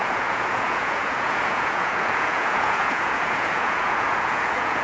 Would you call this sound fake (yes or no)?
yes